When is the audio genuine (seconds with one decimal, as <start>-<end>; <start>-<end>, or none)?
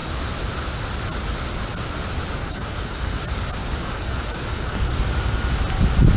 0.0-2.4; 3.2-3.6; 5.0-6.2